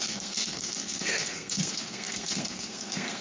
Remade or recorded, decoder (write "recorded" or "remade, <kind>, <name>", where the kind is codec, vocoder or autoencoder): remade, codec, SNAC